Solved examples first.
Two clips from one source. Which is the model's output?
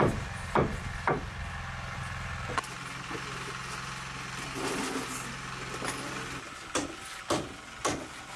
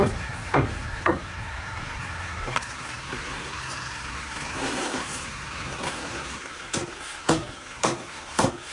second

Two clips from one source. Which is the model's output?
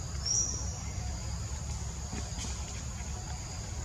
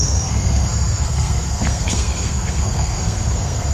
second